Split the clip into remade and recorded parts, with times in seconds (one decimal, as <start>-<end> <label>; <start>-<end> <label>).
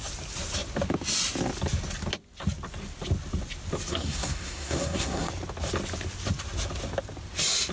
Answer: 0.0-3.9 recorded; 3.9-5.3 remade; 5.3-7.7 recorded